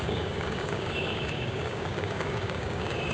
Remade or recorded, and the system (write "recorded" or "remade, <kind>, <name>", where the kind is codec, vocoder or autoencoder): remade, codec, DAC